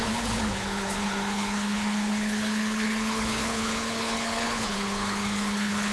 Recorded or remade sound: remade